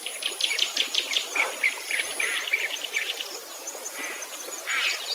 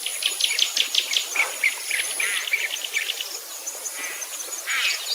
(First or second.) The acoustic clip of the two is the second